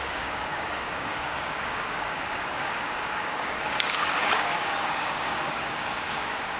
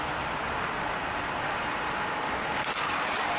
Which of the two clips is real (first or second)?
second